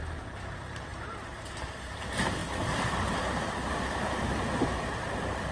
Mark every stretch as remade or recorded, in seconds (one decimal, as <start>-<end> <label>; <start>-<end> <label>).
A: 0.0-2.4 remade; 2.4-3.8 recorded; 3.8-5.5 remade

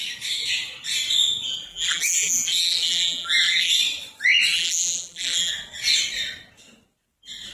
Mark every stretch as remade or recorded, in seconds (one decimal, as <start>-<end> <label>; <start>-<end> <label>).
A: 0.0-1.7 recorded; 1.7-3.7 remade; 3.7-4.5 recorded; 4.5-5.5 remade; 5.5-7.5 recorded

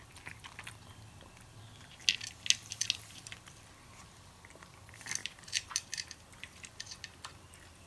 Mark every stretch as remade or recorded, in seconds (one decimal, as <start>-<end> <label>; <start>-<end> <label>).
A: 0.0-5.2 recorded; 5.2-6.7 remade; 6.7-7.9 recorded

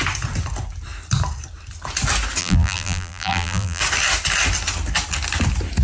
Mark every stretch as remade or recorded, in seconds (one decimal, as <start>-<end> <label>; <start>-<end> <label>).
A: 0.0-2.4 recorded; 2.4-3.8 remade; 3.8-5.8 recorded

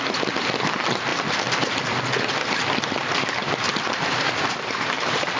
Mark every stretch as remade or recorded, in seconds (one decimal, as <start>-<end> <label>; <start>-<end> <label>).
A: 0.0-1.1 recorded; 1.1-1.7 remade; 1.7-5.4 recorded